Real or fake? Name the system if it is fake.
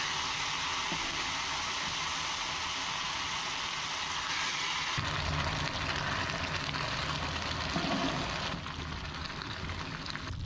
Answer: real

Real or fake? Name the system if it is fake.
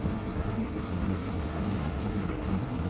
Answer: fake, codec, SNAC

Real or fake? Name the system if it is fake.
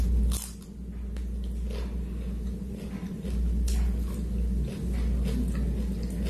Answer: real